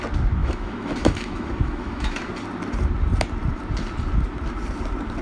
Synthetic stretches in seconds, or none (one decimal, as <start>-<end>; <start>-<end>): 0.4-2.3

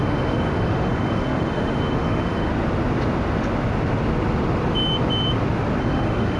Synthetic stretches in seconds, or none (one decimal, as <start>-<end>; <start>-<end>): 0.0-2.5; 5.8-6.4

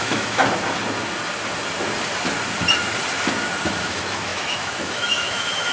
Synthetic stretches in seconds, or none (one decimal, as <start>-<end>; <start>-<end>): 0.0-0.4; 3.8-5.7